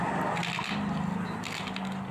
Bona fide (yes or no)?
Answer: yes